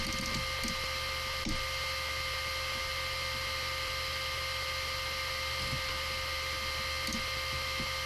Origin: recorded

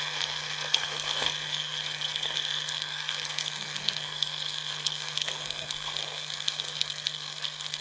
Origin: remade